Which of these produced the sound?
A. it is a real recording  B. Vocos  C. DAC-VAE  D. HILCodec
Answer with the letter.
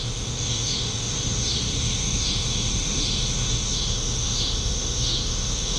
C